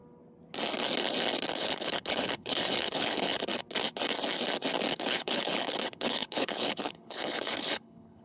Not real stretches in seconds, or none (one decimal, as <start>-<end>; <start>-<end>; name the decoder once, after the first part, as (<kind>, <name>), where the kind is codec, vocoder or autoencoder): 1.6-3.3 (codec, HILCodec); 4.9-8.2